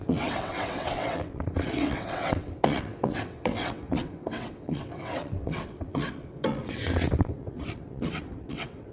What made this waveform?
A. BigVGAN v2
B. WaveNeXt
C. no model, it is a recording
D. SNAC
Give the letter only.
B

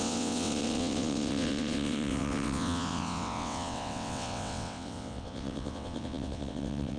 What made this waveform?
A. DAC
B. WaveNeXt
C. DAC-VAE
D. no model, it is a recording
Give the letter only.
B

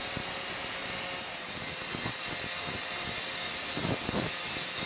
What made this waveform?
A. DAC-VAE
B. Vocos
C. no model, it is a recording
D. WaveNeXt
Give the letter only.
C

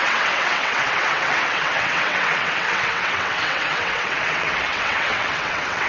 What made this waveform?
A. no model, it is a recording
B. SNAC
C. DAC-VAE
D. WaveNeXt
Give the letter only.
D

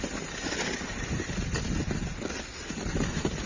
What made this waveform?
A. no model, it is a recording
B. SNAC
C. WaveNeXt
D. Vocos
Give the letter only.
A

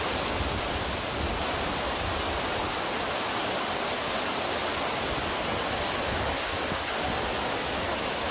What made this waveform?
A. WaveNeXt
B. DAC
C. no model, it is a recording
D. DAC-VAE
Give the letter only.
C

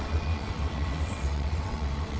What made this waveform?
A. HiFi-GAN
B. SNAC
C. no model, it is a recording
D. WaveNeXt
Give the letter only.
D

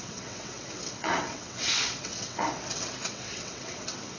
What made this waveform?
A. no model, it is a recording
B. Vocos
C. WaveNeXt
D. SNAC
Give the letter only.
C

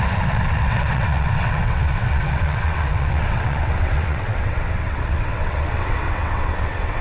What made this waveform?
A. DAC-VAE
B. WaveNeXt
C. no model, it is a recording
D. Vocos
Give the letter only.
B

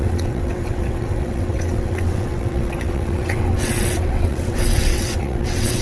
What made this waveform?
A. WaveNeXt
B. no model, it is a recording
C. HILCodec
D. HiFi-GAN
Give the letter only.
A